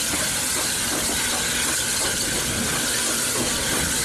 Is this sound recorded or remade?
recorded